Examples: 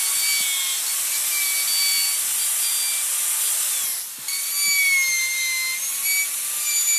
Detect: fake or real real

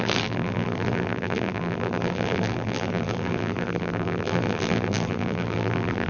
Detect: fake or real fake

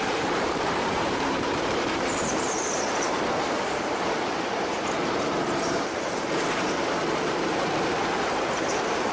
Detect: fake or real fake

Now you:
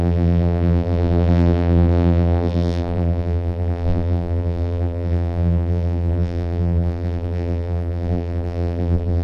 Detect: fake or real fake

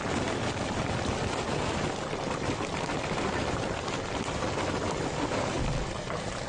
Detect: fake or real fake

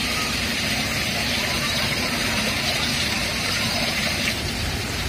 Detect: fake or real fake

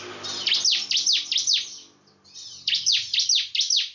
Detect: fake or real real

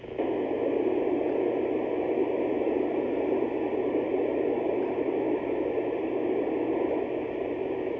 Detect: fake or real real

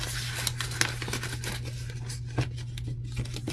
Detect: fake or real real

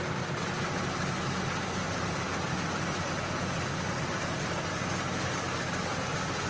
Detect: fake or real real